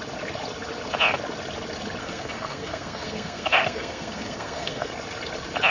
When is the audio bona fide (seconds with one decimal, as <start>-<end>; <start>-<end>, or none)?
0.0-2.0; 4.9-5.7